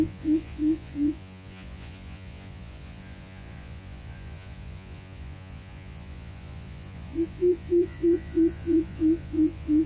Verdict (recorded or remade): remade